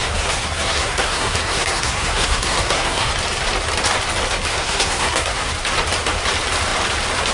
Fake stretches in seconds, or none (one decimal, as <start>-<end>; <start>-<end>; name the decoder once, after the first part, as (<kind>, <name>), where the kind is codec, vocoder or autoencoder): 0.0-3.1 (codec, SNAC); 4.5-5.5